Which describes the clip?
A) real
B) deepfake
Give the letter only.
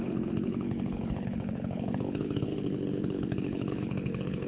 B